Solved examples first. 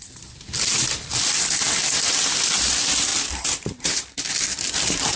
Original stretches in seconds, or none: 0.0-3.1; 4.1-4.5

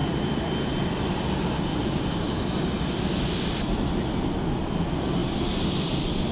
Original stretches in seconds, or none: 0.0-6.3

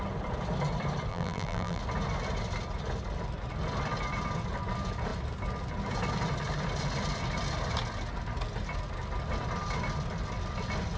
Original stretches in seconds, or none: 0.0-1.1; 1.8-11.0

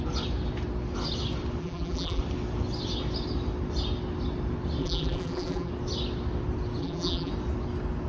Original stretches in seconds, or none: 0.0-1.6; 2.2-4.8; 5.7-6.8; 7.3-8.1

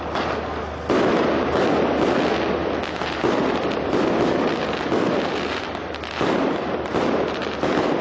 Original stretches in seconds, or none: 0.0-2.6; 7.1-8.0

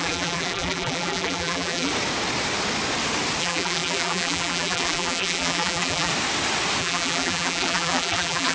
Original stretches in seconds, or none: 1.9-3.4; 6.1-6.8